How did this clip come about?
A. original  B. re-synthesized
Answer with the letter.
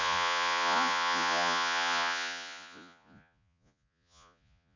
B